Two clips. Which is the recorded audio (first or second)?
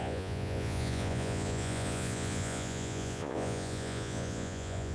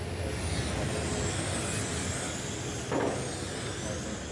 second